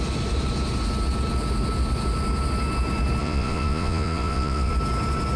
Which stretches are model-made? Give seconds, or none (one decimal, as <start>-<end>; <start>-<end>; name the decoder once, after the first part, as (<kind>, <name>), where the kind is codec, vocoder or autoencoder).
3.2-4.7 (vocoder, Vocos)